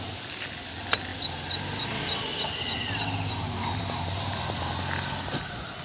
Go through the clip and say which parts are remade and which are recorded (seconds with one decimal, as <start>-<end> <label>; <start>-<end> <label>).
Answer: 0.0-5.8 recorded